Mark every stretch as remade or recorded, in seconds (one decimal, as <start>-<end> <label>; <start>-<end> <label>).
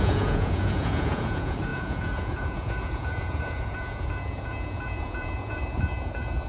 0.0-6.5 remade